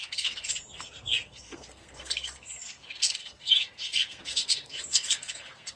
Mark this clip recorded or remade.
remade